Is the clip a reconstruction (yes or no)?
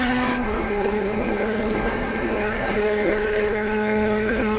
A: yes